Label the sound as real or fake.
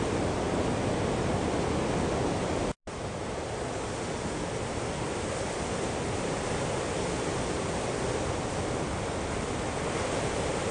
real